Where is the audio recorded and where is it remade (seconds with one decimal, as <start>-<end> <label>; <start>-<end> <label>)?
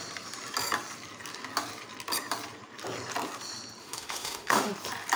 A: 0.0-3.8 recorded; 3.8-4.7 remade; 4.7-5.2 recorded